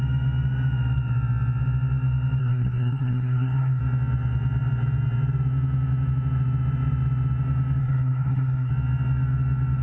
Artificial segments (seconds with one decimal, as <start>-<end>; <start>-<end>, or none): 2.4-3.8; 7.8-8.7